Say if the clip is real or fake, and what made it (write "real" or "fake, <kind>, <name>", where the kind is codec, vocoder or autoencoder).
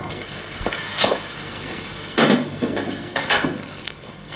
fake, codec, SNAC